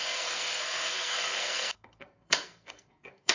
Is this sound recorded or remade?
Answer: remade